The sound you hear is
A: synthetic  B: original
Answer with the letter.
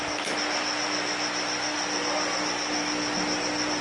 B